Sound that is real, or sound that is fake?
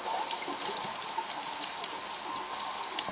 real